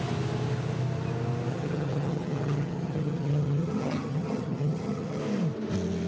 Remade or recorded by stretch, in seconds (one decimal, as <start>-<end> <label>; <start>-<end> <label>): 0.0-1.5 recorded; 1.5-5.2 remade; 5.2-6.1 recorded

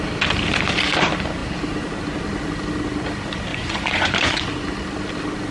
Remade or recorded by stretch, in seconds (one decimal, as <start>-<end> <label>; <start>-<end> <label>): 0.0-3.5 recorded; 3.5-4.4 remade; 4.4-5.5 recorded

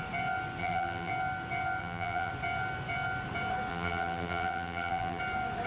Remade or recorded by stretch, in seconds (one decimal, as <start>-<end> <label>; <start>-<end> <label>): 0.0-0.6 recorded; 0.6-1.1 remade; 1.1-1.8 recorded; 1.8-2.3 remade; 2.3-3.7 recorded; 3.7-5.2 remade; 5.2-5.7 recorded

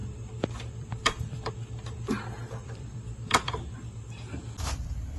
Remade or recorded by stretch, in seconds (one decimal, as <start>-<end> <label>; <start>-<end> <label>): 0.0-1.5 remade; 1.5-2.6 recorded; 2.6-4.0 remade; 4.0-5.2 recorded

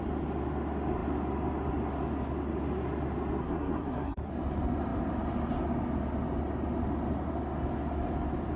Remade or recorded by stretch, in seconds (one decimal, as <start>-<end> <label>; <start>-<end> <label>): 0.0-3.4 recorded; 3.4-4.3 remade; 4.3-8.6 recorded

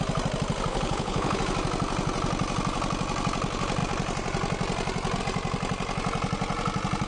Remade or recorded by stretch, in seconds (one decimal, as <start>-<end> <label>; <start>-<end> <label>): 0.0-0.7 recorded; 0.7-1.4 remade; 1.4-7.1 recorded